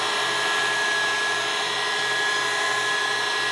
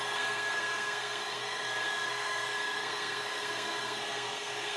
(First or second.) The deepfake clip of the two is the second